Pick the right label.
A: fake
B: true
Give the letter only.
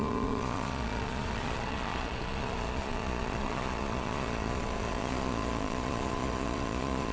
A